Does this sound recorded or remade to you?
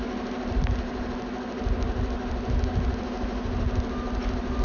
recorded